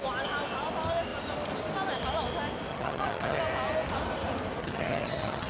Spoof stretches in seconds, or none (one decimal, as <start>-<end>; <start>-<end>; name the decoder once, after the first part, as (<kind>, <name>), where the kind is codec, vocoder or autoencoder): 2.7-3.4 (vocoder, HiFi-GAN); 4.6-5.5